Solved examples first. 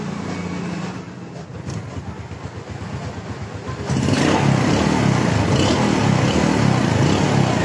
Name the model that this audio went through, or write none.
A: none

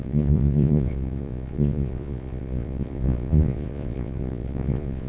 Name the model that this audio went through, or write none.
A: vocoder, Vocos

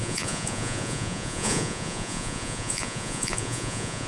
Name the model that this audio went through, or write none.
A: vocoder, Vocos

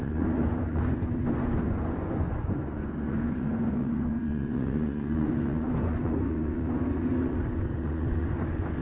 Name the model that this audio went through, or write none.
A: vocoder, Vocos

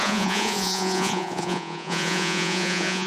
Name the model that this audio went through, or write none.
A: vocoder, Vocos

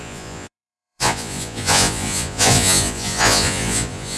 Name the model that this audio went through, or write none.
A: vocoder, Vocos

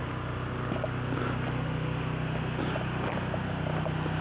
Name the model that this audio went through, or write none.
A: none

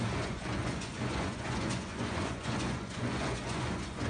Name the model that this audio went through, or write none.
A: vocoder, Vocos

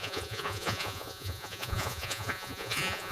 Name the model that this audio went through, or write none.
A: vocoder, Vocos